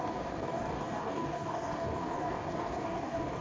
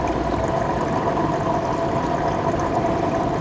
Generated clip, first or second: first